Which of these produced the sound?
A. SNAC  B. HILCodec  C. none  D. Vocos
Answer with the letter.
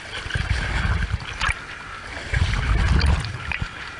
C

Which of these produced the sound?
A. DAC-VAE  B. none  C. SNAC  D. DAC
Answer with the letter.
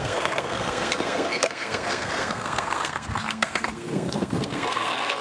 C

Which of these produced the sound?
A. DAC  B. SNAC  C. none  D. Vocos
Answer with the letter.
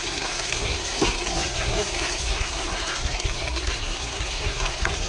B